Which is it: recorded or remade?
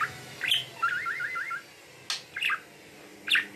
recorded